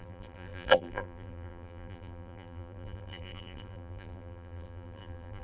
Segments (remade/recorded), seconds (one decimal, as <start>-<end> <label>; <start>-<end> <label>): 0.0-5.4 remade